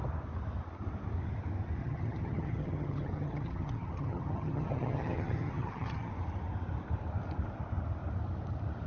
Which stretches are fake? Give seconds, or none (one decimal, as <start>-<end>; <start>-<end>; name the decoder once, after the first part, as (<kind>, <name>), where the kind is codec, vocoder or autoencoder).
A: 1.8-6.1 (vocoder, HiFi-GAN)